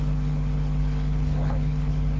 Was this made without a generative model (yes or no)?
no